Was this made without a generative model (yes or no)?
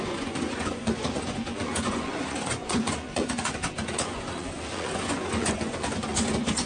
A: no